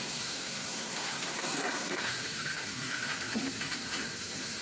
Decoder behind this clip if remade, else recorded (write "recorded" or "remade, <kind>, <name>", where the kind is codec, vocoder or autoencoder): remade, codec, SNAC